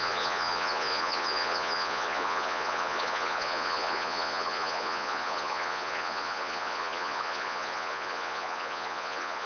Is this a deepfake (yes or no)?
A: yes